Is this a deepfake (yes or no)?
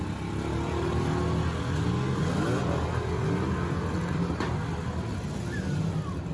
no